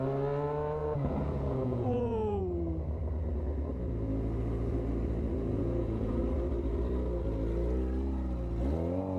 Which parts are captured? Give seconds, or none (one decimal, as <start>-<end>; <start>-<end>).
0.0-0.8; 2.4-5.5; 6.2-9.2